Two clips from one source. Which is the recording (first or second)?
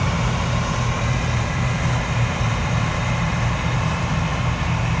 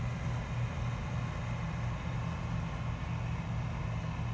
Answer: second